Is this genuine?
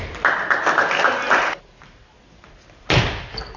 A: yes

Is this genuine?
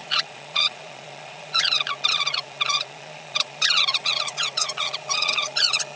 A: no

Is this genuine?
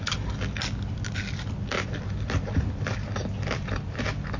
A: yes